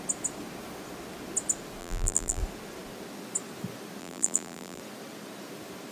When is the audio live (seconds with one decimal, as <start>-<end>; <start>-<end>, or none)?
0.0-1.8; 2.4-4.0; 4.8-5.9